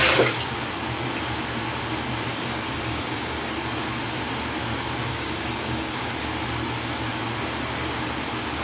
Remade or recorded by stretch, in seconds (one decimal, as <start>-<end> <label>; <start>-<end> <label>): 0.0-2.3 recorded; 2.3-3.5 remade; 3.5-5.1 recorded; 5.1-6.1 remade; 6.1-8.6 recorded